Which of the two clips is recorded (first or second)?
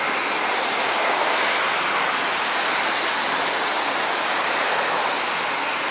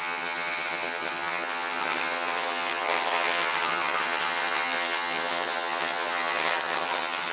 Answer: first